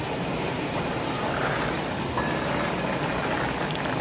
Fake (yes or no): no